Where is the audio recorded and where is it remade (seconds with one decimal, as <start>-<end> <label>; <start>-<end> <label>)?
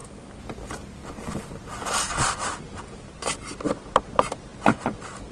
0.0-5.3 recorded